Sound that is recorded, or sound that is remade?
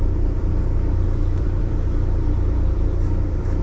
remade